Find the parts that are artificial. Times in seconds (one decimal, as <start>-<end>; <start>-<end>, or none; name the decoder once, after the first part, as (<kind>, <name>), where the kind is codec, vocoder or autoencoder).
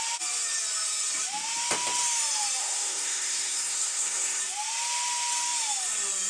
2.6-4.4 (codec, SNAC)